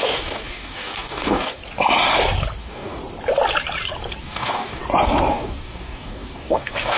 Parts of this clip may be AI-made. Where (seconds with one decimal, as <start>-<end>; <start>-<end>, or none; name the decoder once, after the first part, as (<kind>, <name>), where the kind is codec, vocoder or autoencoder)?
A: 0.0-1.6 (codec, DAC); 2.6-3.0; 4.2-4.8; 5.3-7.0